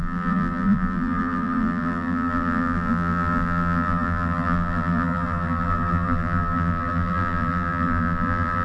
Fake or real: fake